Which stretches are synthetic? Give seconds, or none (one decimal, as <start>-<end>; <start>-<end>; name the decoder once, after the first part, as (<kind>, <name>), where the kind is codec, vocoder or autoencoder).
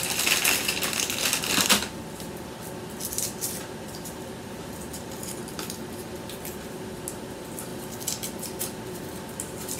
none